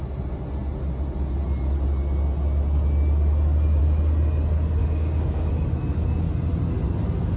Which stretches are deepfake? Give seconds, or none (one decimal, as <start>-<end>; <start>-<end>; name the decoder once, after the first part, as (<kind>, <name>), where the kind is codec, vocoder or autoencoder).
4.8-5.5 (codec, DAC)